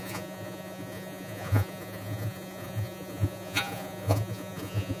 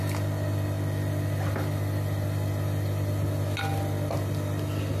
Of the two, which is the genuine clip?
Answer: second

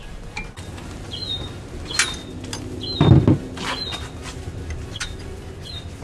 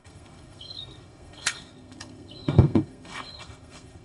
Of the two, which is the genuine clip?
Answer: first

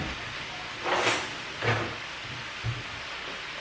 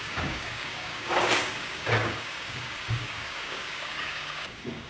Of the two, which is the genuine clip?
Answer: first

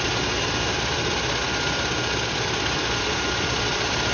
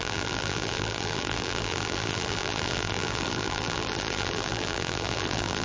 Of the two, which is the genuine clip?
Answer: first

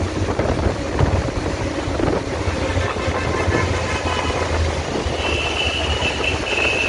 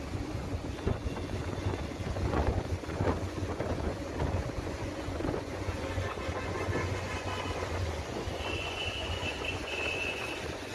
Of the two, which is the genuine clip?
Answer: first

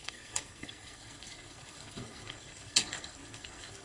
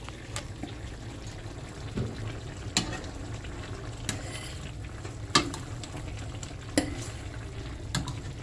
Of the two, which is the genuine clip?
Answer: second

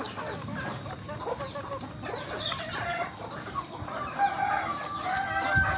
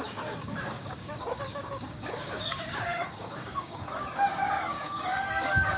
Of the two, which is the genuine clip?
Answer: first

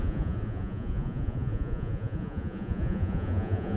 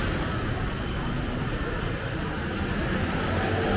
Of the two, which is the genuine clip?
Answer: second